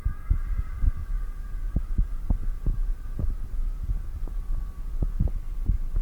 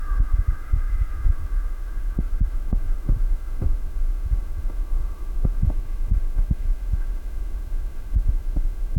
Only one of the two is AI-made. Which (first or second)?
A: second